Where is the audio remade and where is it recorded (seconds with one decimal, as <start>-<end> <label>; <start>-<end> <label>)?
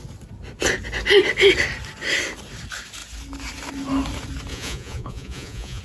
0.0-4.5 recorded; 4.5-5.8 remade